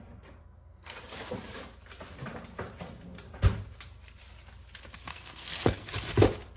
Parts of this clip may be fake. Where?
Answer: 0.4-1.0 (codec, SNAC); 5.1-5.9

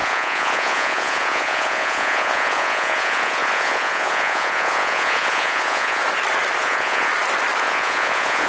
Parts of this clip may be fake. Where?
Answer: 0.0-6.0 (vocoder, Vocos); 6.6-7.1; 7.6-8.5